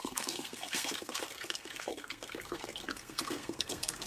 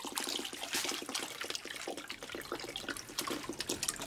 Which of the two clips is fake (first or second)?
first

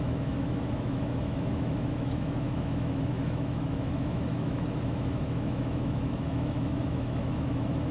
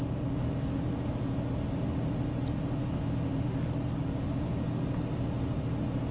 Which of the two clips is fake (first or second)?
first